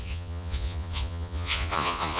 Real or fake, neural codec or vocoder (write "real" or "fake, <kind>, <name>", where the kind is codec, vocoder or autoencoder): fake, vocoder, Vocos